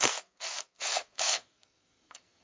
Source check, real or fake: fake